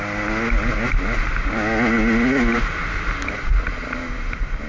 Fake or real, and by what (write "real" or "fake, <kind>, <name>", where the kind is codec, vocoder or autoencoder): real